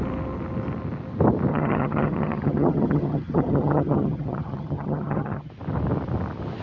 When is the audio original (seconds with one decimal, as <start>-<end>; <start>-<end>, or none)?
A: 0.0-1.5; 5.5-6.6